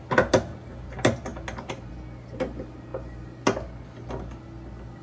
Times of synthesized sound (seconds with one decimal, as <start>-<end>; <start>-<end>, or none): none